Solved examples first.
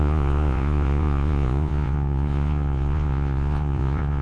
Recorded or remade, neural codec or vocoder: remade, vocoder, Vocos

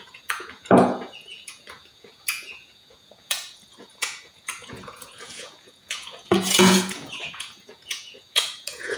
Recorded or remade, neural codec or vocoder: remade, vocoder, Vocos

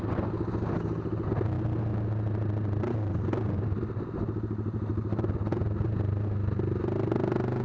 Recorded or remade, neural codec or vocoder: recorded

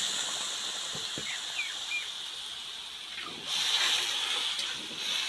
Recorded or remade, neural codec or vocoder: recorded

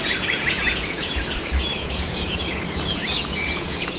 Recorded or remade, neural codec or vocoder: remade, vocoder, Vocos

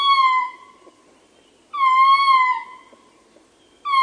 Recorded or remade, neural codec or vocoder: recorded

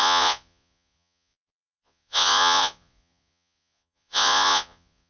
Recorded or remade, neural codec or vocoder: remade, vocoder, Vocos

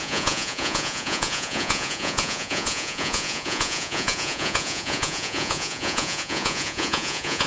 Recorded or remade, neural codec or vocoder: remade, vocoder, Vocos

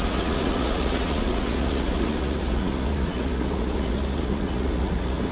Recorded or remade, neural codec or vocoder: remade, vocoder, Vocos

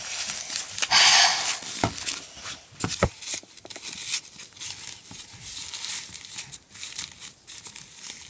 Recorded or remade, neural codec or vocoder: recorded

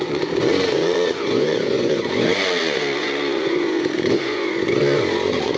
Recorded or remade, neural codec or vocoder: remade, vocoder, Vocos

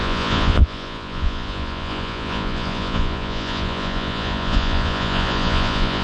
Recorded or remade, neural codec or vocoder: remade, vocoder, Vocos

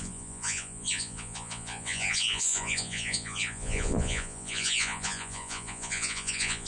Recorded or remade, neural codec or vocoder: remade, vocoder, Vocos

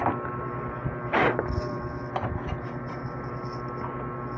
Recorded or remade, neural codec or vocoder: recorded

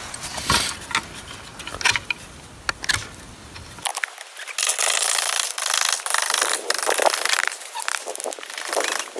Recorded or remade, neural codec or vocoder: recorded